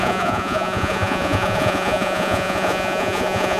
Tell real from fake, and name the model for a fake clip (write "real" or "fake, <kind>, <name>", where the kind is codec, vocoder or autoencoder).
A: fake, vocoder, Vocos